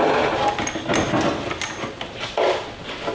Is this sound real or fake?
real